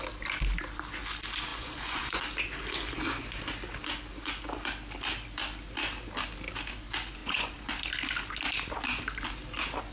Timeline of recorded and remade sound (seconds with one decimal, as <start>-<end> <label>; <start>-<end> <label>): 0.0-1.5 recorded; 1.5-2.2 remade; 2.2-7.2 recorded; 7.2-7.7 remade; 7.7-9.9 recorded